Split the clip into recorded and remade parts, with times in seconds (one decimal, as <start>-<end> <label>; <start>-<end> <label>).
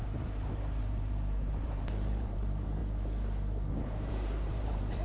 0.0-0.8 recorded; 0.8-2.8 remade; 2.8-4.1 recorded; 4.1-5.0 remade